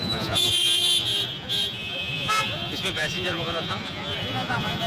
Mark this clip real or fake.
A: fake